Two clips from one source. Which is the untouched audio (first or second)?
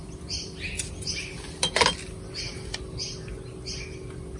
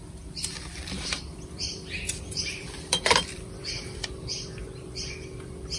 first